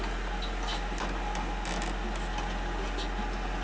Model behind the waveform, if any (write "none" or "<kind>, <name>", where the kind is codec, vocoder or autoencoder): none